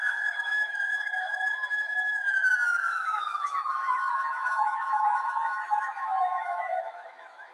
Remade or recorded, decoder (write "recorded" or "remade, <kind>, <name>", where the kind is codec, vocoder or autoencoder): remade, autoencoder, DAC-VAE